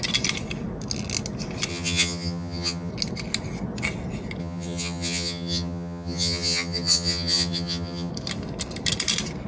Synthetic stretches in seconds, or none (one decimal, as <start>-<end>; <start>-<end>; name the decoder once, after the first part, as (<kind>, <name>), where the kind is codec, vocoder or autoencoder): 1.7-2.9 (vocoder, HiFi-GAN); 4.4-8.1